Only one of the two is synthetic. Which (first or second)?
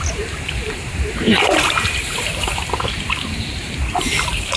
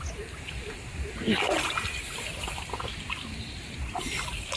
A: first